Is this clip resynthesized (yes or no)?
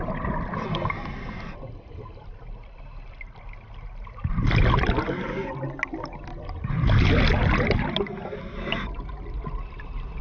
no